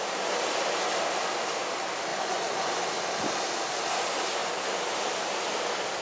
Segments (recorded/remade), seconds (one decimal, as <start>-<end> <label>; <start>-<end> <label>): 0.0-2.1 recorded; 2.1-2.7 remade; 2.7-6.0 recorded